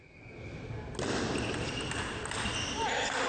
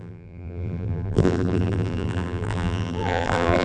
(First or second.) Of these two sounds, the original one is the first